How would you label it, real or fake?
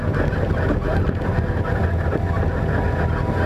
real